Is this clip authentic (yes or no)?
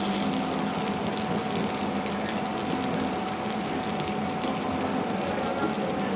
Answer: yes